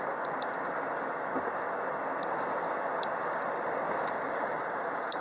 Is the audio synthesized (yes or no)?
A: no